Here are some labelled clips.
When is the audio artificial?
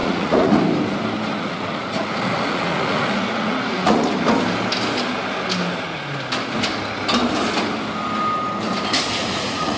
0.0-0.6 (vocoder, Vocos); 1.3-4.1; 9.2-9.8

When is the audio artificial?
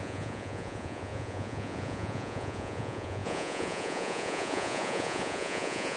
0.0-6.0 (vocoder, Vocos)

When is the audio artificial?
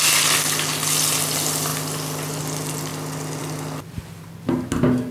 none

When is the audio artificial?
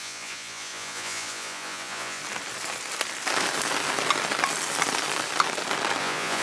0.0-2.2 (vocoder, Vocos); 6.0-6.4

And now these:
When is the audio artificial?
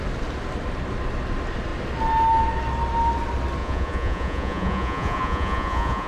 3.6-6.1 (vocoder, Vocos)